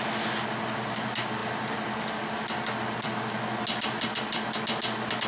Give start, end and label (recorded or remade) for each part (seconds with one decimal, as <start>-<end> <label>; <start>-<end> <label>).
0.0-5.3 recorded